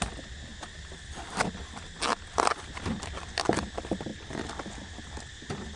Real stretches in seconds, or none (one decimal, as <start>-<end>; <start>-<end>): 0.0-5.8